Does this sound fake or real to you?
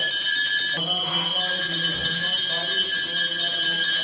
real